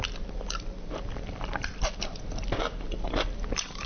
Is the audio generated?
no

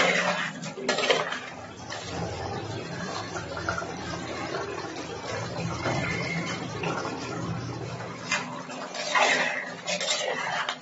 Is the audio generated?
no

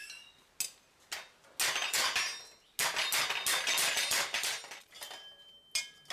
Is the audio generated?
no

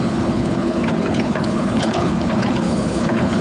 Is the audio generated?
yes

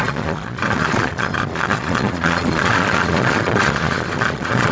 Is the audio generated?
yes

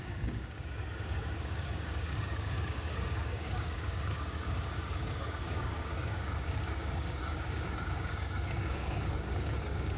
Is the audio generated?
yes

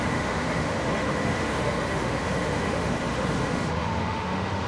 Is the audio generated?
yes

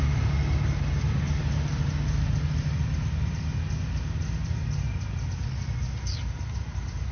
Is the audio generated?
no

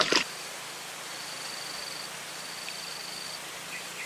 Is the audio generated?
no